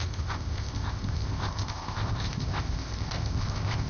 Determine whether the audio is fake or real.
fake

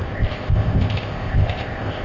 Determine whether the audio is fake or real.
fake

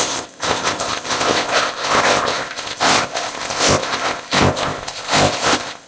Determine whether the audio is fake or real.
fake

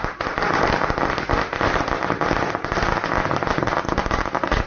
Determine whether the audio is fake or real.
real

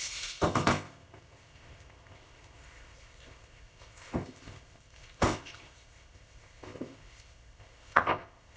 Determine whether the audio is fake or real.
fake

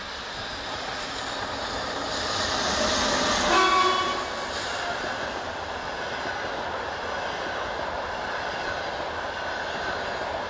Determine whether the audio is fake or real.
real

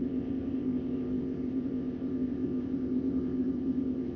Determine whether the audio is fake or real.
fake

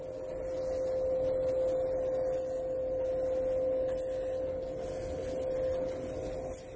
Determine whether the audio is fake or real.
real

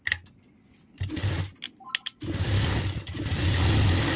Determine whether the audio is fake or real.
real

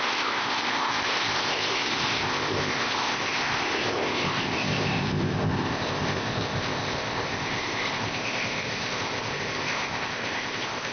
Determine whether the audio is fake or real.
fake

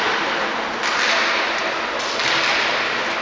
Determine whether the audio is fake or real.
real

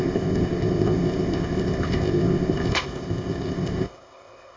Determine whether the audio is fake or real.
fake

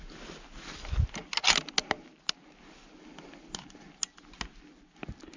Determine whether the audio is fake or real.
real